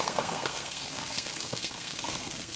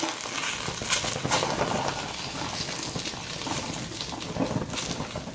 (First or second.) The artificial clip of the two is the first